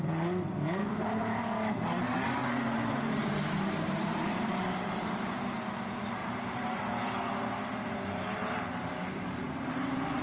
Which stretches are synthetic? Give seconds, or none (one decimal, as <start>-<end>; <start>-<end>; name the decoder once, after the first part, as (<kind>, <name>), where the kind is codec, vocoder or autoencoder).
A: 0.8-5.4 (vocoder, BigVGAN v2); 6.2-6.7; 7.8-10.2